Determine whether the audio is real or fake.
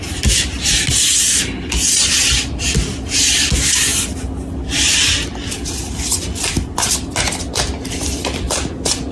real